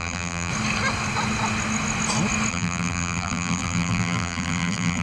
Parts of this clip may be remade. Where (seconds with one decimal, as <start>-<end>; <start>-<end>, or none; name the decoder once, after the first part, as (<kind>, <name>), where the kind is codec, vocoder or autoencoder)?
0.0-0.5 (vocoder, BigVGAN v2); 2.5-5.0